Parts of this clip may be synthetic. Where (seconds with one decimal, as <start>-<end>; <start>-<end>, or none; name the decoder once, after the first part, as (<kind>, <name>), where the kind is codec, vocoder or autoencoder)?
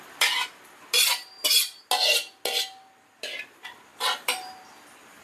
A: none